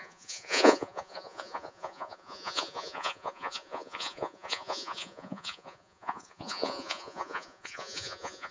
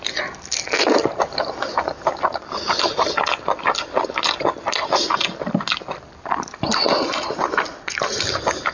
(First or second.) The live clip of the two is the second